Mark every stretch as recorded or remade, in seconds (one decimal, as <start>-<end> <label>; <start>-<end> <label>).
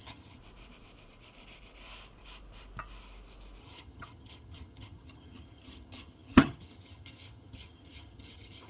0.0-0.4 remade; 0.4-3.6 recorded; 3.6-8.7 remade